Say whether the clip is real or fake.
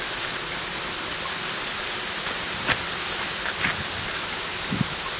real